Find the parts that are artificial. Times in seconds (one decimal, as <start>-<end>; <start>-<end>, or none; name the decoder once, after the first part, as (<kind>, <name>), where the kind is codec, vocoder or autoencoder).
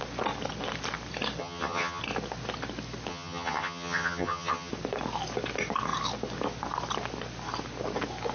1.4-2.0 (vocoder, HiFi-GAN); 3.1-4.7